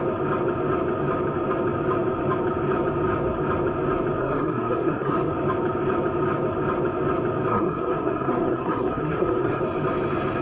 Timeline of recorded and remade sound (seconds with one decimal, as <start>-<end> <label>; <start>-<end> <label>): 0.0-4.2 recorded; 4.2-5.3 remade; 5.3-7.5 recorded; 7.5-9.6 remade; 9.6-10.4 recorded